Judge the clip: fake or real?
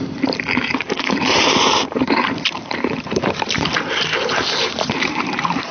fake